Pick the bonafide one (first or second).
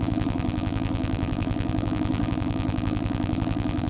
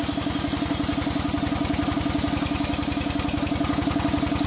second